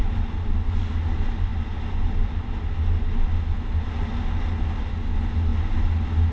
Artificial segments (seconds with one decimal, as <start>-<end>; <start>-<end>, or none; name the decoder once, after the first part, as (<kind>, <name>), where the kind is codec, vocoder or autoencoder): none